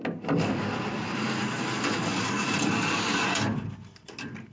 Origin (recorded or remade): recorded